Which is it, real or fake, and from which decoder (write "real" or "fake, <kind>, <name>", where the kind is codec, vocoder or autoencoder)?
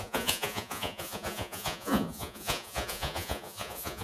fake, vocoder, Vocos